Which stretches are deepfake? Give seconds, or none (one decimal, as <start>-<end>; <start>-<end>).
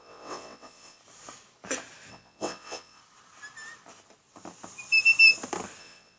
0.0-1.0; 2.1-3.0; 5.8-6.2